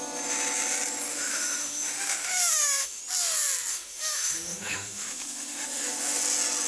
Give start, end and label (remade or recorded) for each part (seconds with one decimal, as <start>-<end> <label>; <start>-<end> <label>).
0.0-1.1 recorded; 1.1-3.0 remade; 3.0-3.7 recorded; 3.7-6.2 remade; 6.2-6.7 recorded